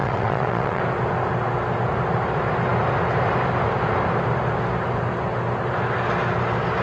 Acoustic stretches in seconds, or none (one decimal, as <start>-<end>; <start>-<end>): 0.8-6.8